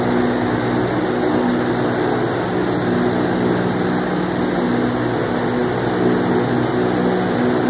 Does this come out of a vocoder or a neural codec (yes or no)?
no